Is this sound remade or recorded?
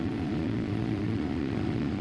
remade